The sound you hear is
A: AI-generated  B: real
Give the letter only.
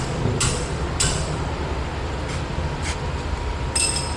B